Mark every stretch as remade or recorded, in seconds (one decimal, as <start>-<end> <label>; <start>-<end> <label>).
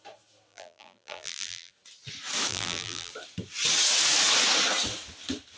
0.0-0.5 recorded; 0.5-1.7 remade; 1.7-2.5 recorded; 2.5-3.1 remade; 3.1-5.6 recorded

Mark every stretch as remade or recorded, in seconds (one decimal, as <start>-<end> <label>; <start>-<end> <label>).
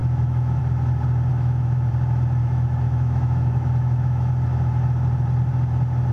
0.0-0.6 remade; 0.6-1.3 recorded; 1.3-1.9 remade; 1.9-2.4 recorded; 2.4-4.3 remade; 4.3-6.1 recorded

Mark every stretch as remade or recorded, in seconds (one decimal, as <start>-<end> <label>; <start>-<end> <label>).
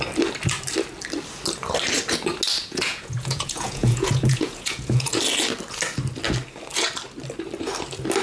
0.0-2.6 recorded; 2.6-5.2 remade; 5.2-8.2 recorded